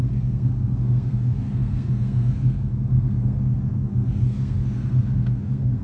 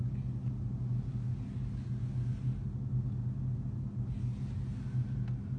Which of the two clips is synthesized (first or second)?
first